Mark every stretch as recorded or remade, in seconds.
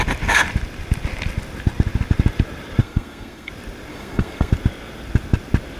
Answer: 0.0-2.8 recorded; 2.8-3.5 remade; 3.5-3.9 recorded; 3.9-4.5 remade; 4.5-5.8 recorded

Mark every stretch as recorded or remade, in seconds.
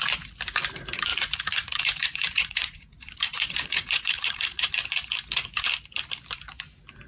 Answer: 0.0-1.1 recorded; 1.1-4.7 remade; 4.7-7.1 recorded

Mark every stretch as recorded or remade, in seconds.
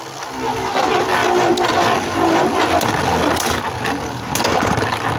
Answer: 0.0-5.2 recorded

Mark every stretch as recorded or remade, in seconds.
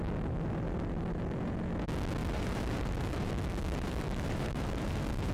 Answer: 0.0-2.2 recorded; 2.2-5.3 remade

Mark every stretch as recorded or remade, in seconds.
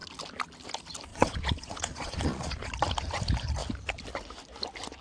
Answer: 0.0-1.1 recorded; 1.1-2.7 remade; 2.7-5.0 recorded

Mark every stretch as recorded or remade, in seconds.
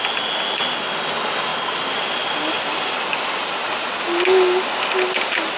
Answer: 0.0-5.6 recorded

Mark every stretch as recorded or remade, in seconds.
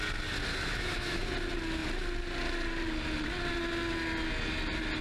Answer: 0.0-0.5 recorded; 0.5-1.2 remade; 1.2-5.0 recorded